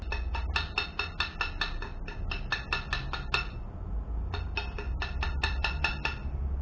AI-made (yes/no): no